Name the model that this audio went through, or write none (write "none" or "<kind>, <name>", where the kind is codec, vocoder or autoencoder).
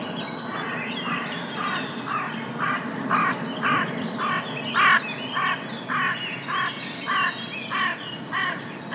none